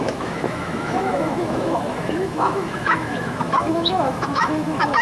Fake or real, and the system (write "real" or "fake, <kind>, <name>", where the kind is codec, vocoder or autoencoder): fake, autoencoder, DAC-VAE